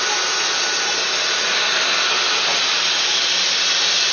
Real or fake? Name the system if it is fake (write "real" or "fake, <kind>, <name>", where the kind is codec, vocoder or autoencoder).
real